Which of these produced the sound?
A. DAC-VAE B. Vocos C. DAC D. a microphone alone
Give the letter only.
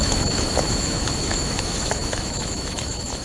A